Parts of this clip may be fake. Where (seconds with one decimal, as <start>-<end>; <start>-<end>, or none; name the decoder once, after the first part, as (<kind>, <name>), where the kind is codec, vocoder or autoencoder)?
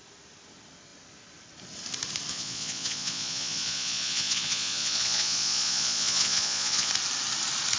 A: 2.3-6.9 (vocoder, Vocos)